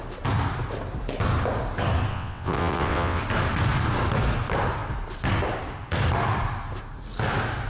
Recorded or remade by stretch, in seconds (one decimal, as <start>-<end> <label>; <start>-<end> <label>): 0.0-2.1 recorded; 2.1-3.2 remade; 3.2-7.7 recorded